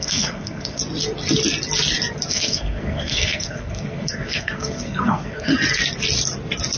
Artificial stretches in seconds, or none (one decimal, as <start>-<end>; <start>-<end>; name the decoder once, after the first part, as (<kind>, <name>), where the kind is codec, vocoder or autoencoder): 0.0-0.8 (codec, SNAC); 2.3-5.5